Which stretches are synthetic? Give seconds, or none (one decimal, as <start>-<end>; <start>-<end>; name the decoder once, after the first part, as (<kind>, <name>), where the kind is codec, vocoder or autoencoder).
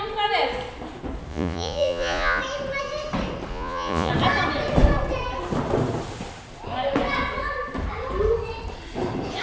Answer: 1.3-2.4 (vocoder, Vocos); 3.5-4.1